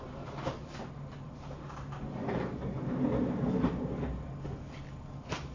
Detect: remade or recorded recorded